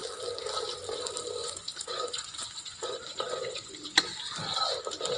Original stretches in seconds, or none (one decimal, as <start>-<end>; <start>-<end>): 0.0-1.4; 4.2-5.2